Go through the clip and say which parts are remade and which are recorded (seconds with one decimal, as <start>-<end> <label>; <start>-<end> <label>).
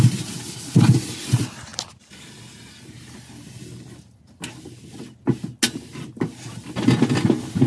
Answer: 0.0-7.7 recorded